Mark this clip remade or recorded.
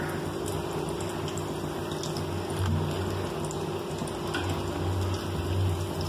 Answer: recorded